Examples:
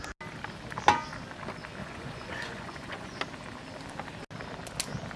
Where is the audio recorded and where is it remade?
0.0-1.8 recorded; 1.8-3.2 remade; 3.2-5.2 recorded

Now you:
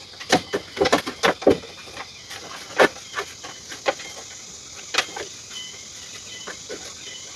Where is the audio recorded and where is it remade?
0.0-7.4 recorded

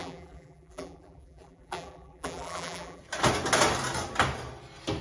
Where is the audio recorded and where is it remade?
0.0-3.0 remade; 3.0-5.0 recorded

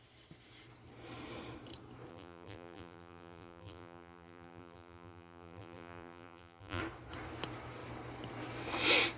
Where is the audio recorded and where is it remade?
0.0-2.1 recorded; 2.1-6.8 remade; 6.8-9.2 recorded

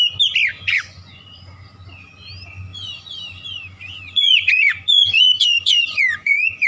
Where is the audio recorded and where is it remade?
0.0-0.5 recorded; 0.5-1.4 remade; 1.4-2.7 recorded; 2.7-6.7 remade

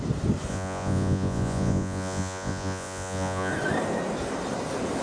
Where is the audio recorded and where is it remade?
0.0-0.5 recorded; 0.5-3.5 remade; 3.5-5.0 recorded

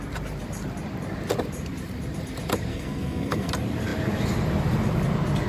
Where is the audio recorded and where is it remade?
0.0-2.7 recorded; 2.7-3.5 remade; 3.5-5.5 recorded